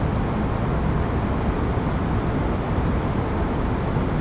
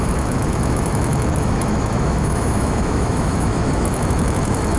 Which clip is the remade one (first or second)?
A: second